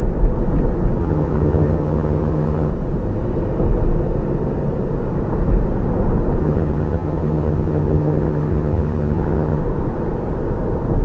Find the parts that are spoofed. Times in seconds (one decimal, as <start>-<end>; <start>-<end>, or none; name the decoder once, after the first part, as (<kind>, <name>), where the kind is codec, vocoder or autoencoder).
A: 1.0-2.7 (vocoder, HiFi-GAN); 6.4-9.6